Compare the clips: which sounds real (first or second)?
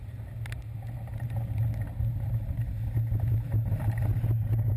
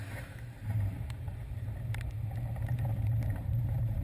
first